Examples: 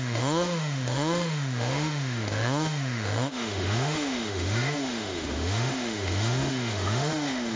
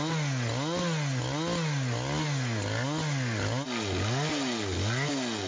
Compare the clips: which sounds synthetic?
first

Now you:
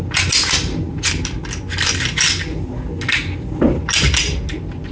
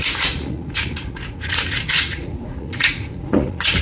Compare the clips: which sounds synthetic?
second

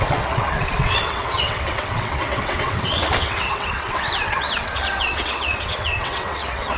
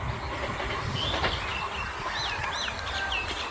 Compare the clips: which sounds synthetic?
first